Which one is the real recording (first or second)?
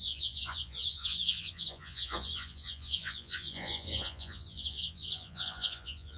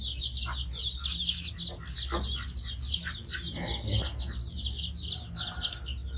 second